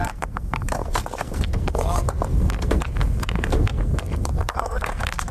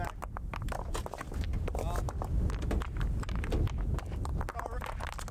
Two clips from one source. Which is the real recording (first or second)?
second